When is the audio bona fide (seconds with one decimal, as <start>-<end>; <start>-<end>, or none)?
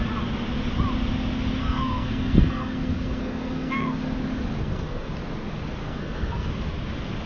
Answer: 0.0-1.6; 4.0-4.6; 5.1-5.8; 6.5-7.3